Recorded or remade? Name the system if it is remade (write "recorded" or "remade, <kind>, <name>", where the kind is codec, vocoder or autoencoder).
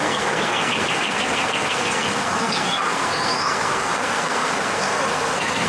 remade, codec, SNAC